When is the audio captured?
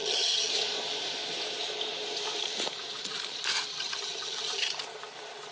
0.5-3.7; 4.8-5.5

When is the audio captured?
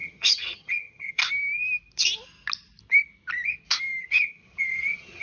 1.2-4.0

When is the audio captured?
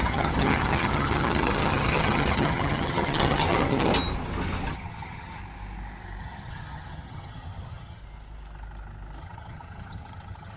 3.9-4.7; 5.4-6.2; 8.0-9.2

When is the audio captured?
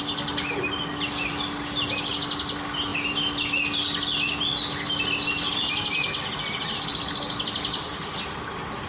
0.0-8.9